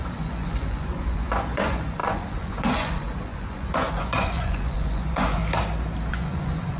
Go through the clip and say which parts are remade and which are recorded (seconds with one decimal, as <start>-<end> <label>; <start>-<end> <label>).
0.0-5.4 remade; 5.4-6.1 recorded; 6.1-6.8 remade